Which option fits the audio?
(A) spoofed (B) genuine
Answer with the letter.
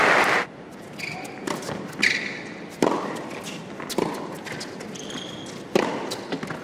B